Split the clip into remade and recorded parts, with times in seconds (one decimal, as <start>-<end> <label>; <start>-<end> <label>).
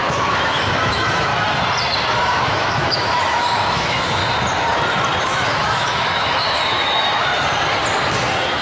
0.0-1.3 remade; 1.3-2.3 recorded; 2.3-4.2 remade; 4.2-5.2 recorded; 5.2-7.3 remade; 7.3-8.6 recorded